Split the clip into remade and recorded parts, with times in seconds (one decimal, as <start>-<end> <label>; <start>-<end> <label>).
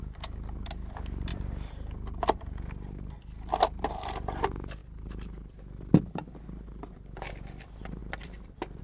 0.0-1.3 recorded; 1.3-3.6 remade; 3.6-8.0 recorded; 8.0-8.8 remade